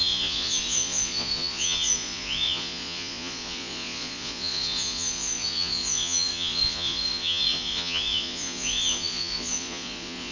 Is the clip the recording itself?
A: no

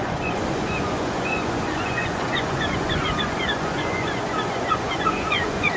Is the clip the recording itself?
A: no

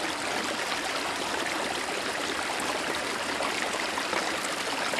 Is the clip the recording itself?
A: yes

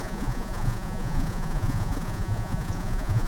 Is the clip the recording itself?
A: no